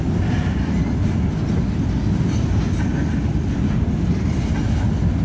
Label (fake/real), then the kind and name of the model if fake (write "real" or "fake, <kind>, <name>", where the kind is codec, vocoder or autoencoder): real